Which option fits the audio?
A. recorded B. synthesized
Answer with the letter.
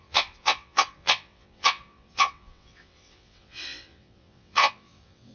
B